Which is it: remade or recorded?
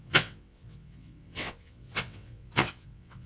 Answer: remade